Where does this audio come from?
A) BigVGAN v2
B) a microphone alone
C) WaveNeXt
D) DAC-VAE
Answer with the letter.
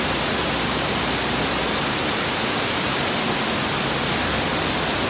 B